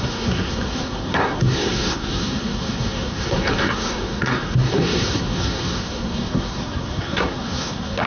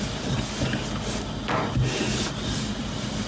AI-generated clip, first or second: first